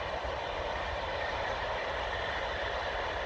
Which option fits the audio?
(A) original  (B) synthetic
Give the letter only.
A